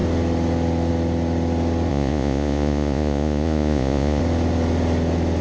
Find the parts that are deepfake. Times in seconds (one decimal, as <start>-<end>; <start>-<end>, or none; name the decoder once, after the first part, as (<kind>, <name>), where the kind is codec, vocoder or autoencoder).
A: 1.9-4.2 (vocoder, Vocos)